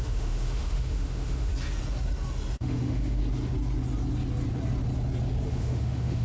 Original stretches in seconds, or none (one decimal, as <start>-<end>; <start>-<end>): 1.5-2.6; 3.2-5.5